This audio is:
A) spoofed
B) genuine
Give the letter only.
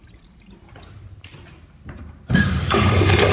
A